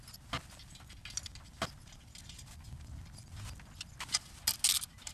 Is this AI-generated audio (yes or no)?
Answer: no